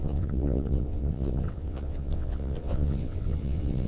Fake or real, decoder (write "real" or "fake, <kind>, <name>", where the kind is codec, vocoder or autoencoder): fake, vocoder, WaveNeXt